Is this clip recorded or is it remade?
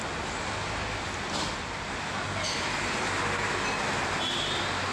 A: recorded